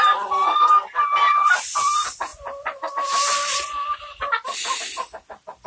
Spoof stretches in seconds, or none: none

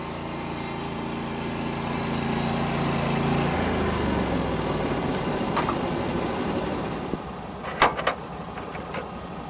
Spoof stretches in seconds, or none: none

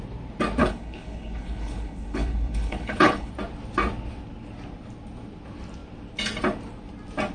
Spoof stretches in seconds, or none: 0.6-3.3

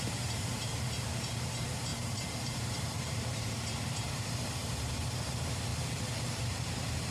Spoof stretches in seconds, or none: 0.0-5.7; 6.3-7.1

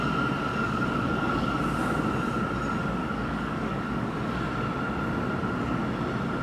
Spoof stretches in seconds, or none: 0.5-1.6; 3.0-4.3

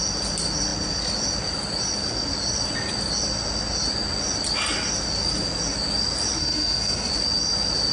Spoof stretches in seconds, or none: 6.4-7.1